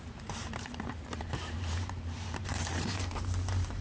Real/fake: fake